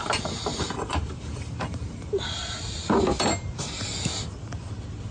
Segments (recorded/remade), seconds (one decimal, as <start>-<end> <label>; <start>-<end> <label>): 0.0-0.5 recorded; 0.5-2.1 remade; 2.1-5.1 recorded